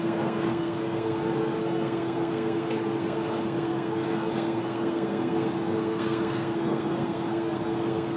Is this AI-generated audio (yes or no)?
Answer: yes